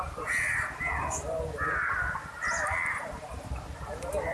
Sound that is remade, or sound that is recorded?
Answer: recorded